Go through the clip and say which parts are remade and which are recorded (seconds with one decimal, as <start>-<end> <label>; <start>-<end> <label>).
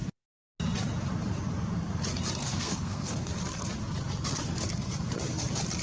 0.0-2.4 recorded; 2.4-3.3 remade; 3.3-5.8 recorded